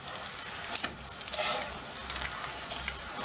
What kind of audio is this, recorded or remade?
remade